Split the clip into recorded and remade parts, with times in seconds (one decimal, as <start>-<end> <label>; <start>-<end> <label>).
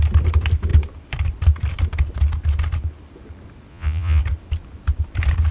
0.0-3.7 recorded; 3.7-4.2 remade; 4.2-5.5 recorded